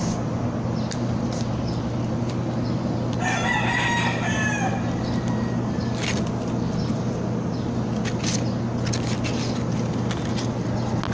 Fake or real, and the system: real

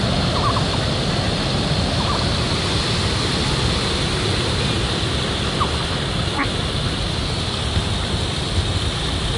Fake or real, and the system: real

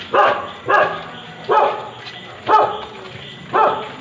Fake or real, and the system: real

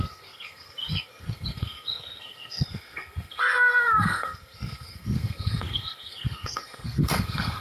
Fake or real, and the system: fake, codec, SNAC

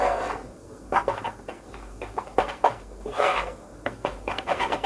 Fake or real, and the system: fake, codec, SNAC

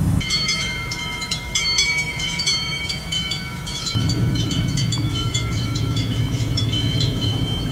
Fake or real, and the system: fake, autoencoder, DAC-VAE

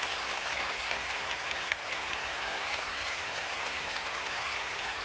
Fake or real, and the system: fake, codec, SNAC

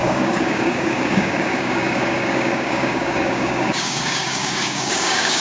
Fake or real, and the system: fake, codec, DAC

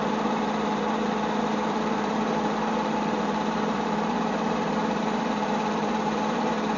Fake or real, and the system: fake, vocoder, BigVGAN v2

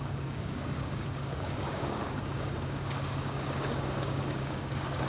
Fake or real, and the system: fake, codec, DAC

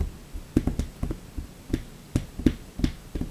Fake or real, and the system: real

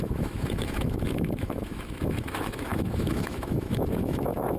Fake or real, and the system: fake, autoencoder, DAC-VAE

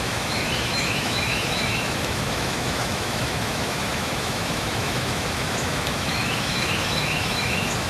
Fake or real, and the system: fake, autoencoder, DAC-VAE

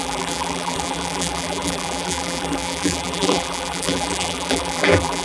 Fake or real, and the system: fake, vocoder, BigVGAN v2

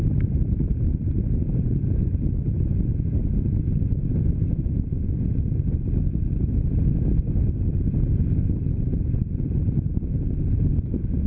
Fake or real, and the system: real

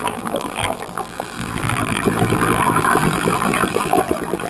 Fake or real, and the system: fake, vocoder, BigVGAN v2